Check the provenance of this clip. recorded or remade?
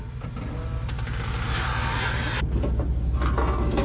recorded